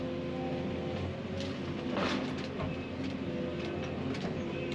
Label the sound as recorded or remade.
recorded